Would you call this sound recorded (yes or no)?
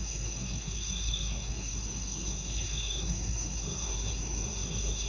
no